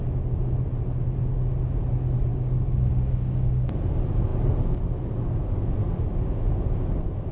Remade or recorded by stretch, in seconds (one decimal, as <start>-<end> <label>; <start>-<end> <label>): 0.0-2.3 recorded; 2.3-3.7 remade; 3.7-7.3 recorded